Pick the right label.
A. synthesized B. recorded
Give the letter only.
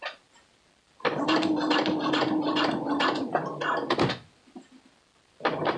B